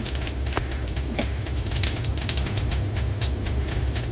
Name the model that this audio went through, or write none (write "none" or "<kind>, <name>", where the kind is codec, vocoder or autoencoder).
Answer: autoencoder, DAC-VAE